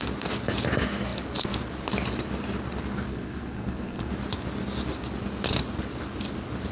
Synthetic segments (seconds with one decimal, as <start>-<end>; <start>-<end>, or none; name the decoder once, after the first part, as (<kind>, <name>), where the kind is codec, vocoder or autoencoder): 3.1-4.1 (codec, SNAC)